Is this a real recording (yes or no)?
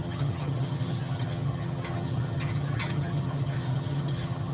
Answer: no